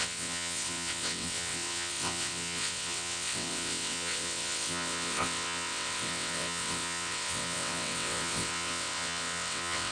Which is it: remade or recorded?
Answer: remade